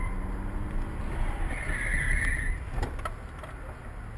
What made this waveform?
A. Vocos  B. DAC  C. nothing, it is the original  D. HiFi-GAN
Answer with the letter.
C